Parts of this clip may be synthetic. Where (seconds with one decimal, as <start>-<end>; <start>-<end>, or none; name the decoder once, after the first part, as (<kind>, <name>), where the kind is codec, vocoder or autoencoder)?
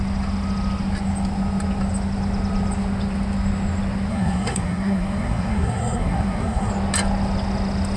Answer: 4.1-6.7 (codec, SNAC)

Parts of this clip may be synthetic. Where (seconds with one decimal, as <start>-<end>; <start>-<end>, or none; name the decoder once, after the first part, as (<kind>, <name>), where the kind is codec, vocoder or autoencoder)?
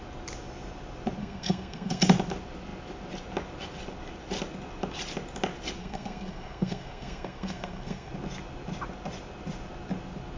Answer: 1.2-2.0 (codec, SNAC); 5.8-8.1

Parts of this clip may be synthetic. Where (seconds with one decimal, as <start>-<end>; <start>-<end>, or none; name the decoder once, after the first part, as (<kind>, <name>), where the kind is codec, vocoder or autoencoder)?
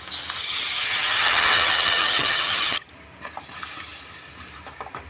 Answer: 0.4-2.9 (vocoder, HiFi-GAN)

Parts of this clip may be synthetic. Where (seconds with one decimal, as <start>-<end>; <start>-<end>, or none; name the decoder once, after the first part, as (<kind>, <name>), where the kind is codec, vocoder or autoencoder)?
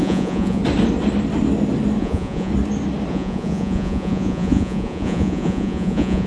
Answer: 0.0-0.6 (vocoder, Vocos); 2.0-2.5; 3.1-6.3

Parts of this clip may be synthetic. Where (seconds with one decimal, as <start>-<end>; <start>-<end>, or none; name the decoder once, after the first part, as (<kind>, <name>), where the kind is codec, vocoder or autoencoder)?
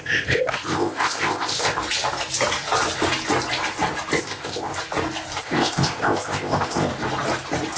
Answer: 0.0-1.8 (codec, ZipCodec); 4.2-4.7; 5.4-6.9